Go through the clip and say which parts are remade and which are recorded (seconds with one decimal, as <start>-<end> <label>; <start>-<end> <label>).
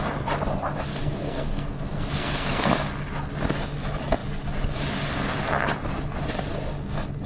0.0-0.9 recorded; 0.9-2.7 remade; 2.7-7.3 recorded